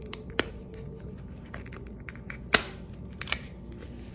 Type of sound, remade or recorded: remade